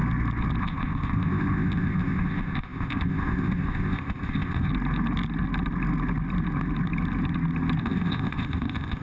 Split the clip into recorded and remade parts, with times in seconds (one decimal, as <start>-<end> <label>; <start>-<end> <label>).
0.0-0.6 recorded; 0.6-4.7 remade; 4.7-7.8 recorded; 7.8-9.0 remade